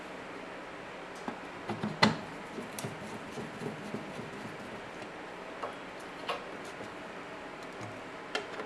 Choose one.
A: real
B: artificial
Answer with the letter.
A